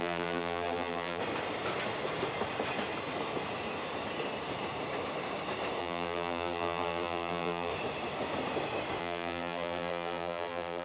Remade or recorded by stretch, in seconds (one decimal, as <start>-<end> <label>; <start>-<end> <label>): 0.0-1.2 remade; 1.2-5.8 recorded; 5.8-7.7 remade; 7.7-9.0 recorded; 9.0-10.8 remade